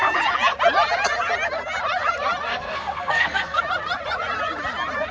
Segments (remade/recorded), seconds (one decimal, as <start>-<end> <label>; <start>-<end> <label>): 0.0-2.5 recorded; 2.5-3.6 remade; 3.6-5.1 recorded